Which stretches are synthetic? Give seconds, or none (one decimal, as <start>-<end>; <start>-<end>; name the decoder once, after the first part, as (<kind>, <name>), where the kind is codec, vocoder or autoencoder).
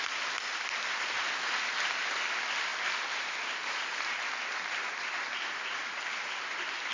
none